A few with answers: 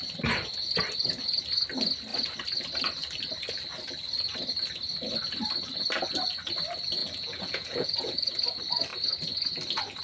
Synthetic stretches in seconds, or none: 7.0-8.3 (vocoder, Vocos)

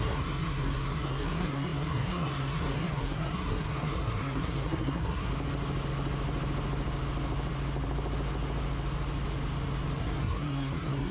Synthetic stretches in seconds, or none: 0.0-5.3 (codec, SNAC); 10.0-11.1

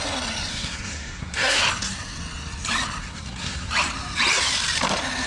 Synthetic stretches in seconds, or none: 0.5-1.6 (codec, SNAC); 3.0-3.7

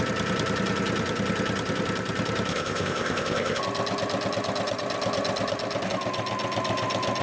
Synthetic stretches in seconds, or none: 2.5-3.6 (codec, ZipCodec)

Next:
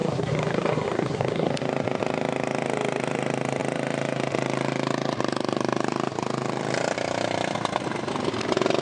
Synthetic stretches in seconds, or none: 0.0-1.5 (codec, SNAC)

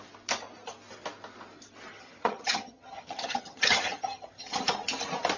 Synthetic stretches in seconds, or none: 1.9-4.6 (vocoder, HiFi-GAN)